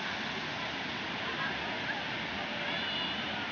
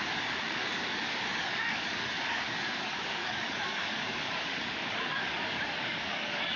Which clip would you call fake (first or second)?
second